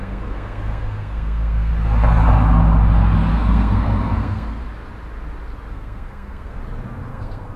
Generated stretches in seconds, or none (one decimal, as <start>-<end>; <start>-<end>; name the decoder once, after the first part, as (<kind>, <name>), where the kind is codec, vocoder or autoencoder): 0.0-1.7 (codec, SNAC); 3.3-4.6; 5.7-6.6; 7.1-7.6